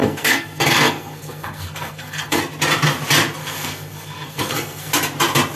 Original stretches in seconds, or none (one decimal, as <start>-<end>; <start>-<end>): 2.4-3.4; 4.9-5.6